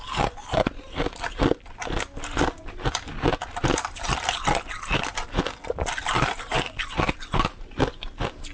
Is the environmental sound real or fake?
real